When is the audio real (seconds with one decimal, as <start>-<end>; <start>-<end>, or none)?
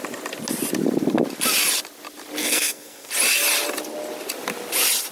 0.0-2.4; 3.1-5.1